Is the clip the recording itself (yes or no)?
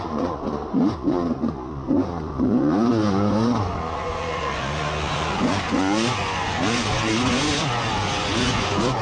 no